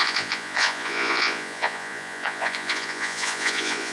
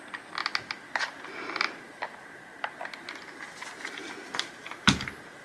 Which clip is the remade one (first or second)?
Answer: first